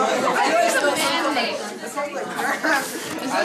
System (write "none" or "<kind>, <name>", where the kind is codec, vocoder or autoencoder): none